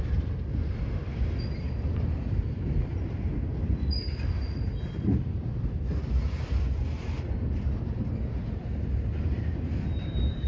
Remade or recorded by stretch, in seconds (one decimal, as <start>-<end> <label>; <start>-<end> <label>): 0.0-4.0 remade; 4.0-4.6 recorded; 4.6-5.9 remade; 5.9-8.6 recorded; 8.6-10.5 remade